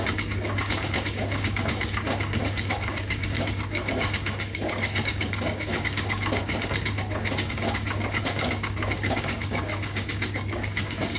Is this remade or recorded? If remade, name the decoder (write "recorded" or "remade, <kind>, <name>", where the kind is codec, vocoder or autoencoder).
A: remade, codec, DAC